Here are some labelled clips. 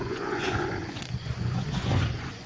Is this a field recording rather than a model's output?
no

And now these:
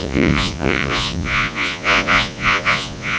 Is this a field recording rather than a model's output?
no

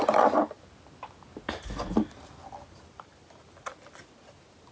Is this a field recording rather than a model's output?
yes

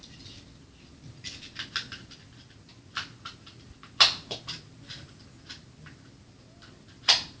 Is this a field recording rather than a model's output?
yes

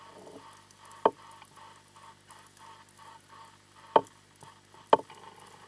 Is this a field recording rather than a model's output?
yes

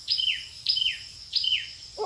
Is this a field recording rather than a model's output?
no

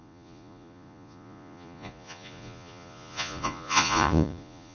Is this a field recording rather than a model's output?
no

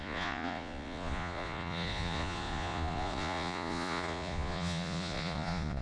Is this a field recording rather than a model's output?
no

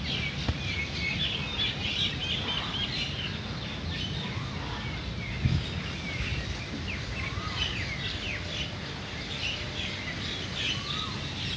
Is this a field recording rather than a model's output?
yes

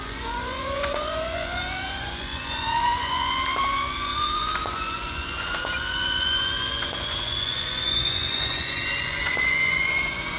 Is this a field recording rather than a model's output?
no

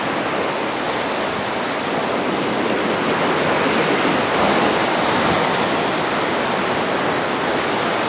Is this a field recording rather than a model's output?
yes